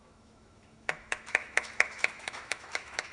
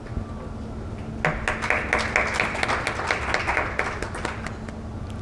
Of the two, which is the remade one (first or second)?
first